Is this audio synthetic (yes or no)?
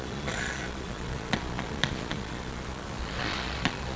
yes